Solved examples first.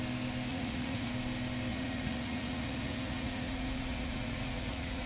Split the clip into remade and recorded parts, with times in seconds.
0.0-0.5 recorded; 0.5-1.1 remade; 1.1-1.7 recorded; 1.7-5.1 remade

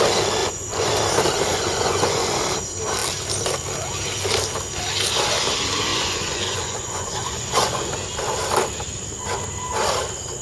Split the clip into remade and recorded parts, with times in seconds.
0.0-0.4 recorded; 0.4-0.9 remade; 0.9-1.5 recorded; 1.5-2.4 remade; 2.4-5.9 recorded; 5.9-7.9 remade; 7.9-10.4 recorded

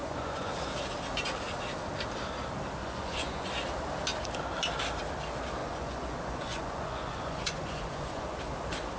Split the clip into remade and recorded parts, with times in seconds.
0.0-0.5 remade; 0.5-2.8 recorded; 2.8-3.5 remade; 3.5-5.6 recorded; 5.6-8.4 remade; 8.4-9.0 recorded

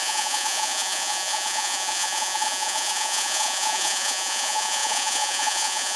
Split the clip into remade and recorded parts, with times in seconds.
0.0-6.0 remade